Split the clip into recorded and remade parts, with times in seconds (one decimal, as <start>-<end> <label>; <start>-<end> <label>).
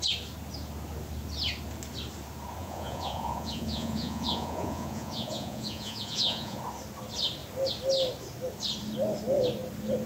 0.0-2.6 recorded; 2.6-6.6 remade; 6.6-10.1 recorded